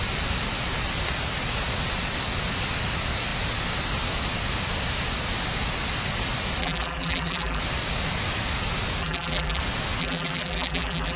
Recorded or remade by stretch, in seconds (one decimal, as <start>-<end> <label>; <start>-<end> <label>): 0.0-6.6 recorded; 6.6-7.6 remade; 7.6-9.0 recorded; 9.0-9.6 remade; 9.6-10.0 recorded; 10.0-11.2 remade